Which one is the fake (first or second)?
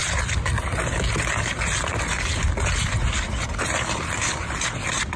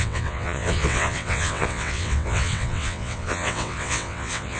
second